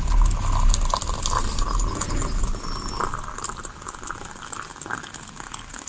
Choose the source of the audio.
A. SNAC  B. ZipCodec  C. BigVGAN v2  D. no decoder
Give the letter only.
D